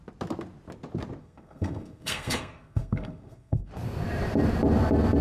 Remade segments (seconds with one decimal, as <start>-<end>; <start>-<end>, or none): 1.2-3.7